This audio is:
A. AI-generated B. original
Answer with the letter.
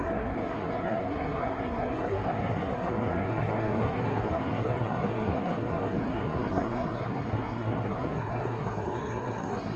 A